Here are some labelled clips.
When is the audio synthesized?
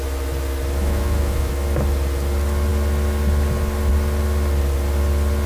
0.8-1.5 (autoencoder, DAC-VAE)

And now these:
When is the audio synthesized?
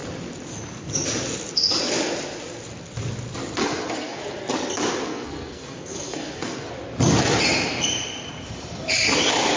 3.6-4.2 (codec, SNAC); 5.1-6.7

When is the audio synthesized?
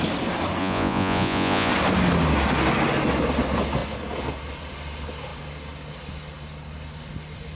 0.6-1.7 (vocoder, Vocos)